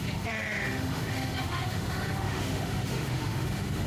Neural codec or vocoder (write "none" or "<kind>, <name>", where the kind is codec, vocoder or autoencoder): autoencoder, DAC-VAE